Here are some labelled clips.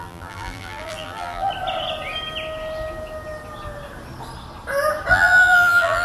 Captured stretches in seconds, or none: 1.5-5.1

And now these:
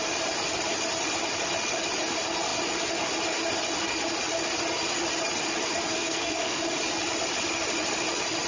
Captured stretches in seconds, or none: 0.0-5.9; 6.6-8.5

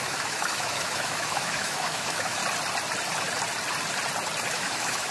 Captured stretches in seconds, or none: 2.4-4.5

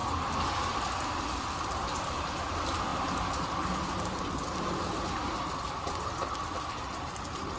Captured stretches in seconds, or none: 0.0-7.6

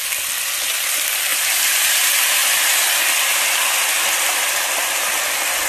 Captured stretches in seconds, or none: 0.0-5.7